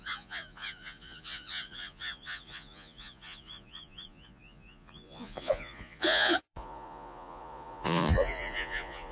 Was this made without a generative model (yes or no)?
no